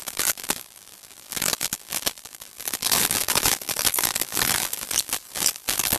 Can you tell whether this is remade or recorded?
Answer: remade